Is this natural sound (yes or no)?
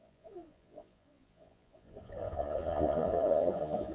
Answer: no